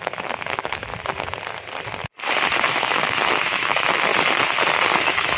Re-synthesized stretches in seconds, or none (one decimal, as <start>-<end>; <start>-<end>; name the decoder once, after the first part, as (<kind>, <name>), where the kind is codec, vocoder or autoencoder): 0.0-0.9 (autoencoder, DAC-VAE); 2.7-4.1; 5.0-5.4